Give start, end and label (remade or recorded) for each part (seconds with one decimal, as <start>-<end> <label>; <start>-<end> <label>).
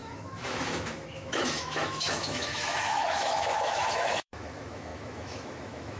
0.0-6.0 remade